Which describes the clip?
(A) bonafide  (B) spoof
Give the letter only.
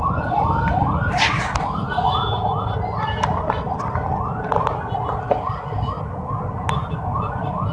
A